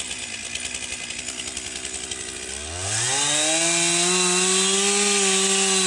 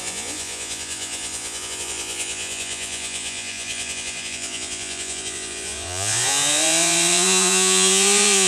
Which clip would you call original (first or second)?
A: first